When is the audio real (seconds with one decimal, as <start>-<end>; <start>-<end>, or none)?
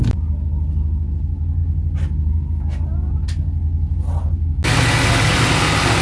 0.0-6.0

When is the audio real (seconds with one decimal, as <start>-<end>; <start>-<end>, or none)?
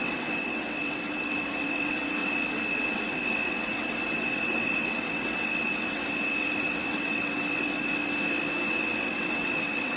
8.0-8.7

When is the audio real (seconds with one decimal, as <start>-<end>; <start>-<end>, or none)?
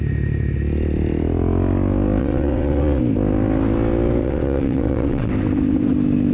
0.0-2.2; 3.0-4.2; 5.3-6.3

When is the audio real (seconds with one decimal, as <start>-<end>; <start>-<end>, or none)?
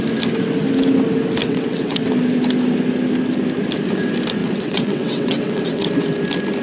0.0-1.4; 2.1-4.4; 5.9-6.6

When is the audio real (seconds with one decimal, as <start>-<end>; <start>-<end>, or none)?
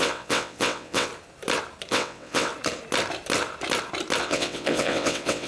1.1-1.9; 2.5-4.2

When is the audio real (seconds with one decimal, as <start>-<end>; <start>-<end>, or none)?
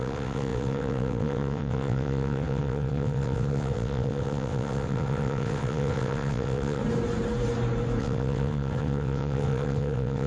6.8-8.0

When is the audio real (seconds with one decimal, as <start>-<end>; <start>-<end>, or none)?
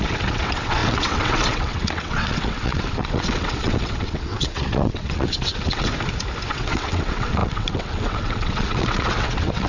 5.9-6.5